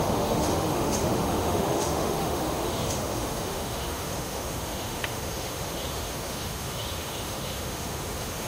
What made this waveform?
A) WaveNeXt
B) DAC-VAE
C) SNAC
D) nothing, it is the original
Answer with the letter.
B